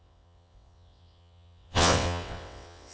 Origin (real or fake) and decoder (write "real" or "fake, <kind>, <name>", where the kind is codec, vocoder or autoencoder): fake, vocoder, WaveNeXt